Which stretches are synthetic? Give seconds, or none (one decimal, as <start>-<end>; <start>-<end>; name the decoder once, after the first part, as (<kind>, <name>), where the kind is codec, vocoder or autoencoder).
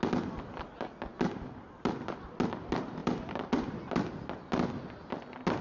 3.0-3.5 (vocoder, BigVGAN v2)